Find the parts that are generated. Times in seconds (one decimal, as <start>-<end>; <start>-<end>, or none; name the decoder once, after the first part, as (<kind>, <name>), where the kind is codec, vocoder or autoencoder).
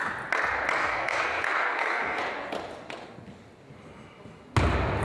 0.8-2.2 (codec, SNAC)